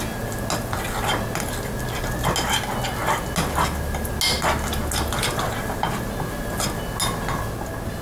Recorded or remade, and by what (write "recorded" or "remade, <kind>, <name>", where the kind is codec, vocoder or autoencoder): recorded